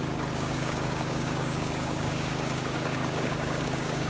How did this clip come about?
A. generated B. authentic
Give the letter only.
A